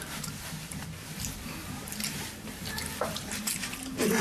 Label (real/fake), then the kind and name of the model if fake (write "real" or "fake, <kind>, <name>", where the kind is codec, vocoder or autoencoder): fake, vocoder, BigVGAN v2